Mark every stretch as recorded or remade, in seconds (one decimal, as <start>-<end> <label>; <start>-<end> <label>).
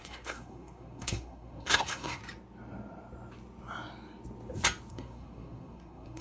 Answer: 0.0-2.2 remade; 2.2-4.9 recorded; 4.9-6.2 remade